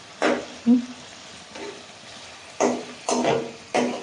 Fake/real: real